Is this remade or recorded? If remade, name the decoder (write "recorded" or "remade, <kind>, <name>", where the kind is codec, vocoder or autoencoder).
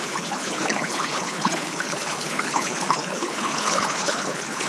remade, codec, HILCodec